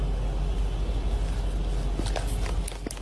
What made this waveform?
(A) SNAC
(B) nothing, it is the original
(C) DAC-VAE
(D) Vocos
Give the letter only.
B